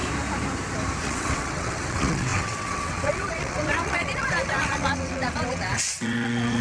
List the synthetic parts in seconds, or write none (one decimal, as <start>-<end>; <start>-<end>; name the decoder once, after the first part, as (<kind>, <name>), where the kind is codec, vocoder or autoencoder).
1.0-6.6 (vocoder, WaveNeXt)